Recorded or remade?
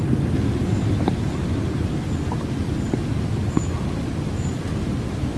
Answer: recorded